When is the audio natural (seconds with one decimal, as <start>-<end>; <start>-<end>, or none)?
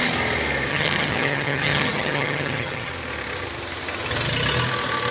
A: 0.0-0.7; 2.9-5.1